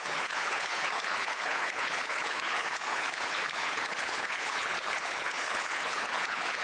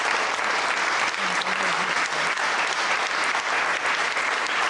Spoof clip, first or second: first